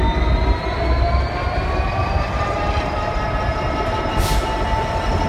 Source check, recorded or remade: recorded